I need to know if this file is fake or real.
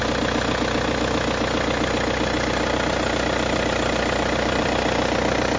real